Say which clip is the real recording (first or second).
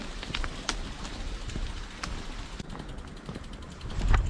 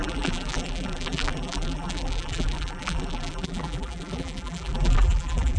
first